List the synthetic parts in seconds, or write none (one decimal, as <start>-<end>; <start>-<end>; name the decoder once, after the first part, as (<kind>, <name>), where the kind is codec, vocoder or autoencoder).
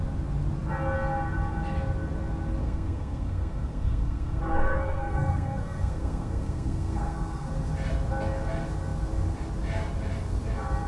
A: 2.6-7.5 (codec, SNAC)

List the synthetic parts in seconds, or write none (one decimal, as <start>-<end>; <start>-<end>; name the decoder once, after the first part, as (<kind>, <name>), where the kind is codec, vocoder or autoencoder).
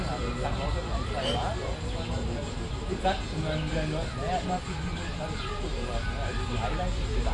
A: none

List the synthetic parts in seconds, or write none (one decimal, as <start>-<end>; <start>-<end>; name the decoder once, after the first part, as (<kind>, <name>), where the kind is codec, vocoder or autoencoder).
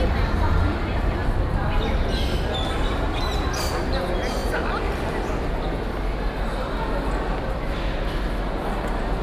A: none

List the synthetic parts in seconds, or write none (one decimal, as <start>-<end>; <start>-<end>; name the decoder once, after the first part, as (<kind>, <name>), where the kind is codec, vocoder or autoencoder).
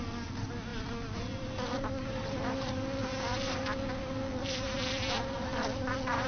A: none